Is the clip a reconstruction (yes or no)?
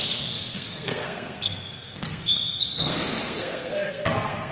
yes